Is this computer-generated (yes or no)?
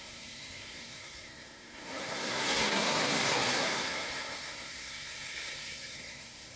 yes